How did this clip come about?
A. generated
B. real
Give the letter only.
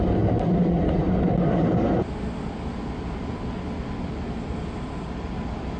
B